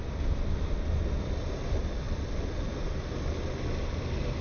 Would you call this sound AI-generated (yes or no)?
no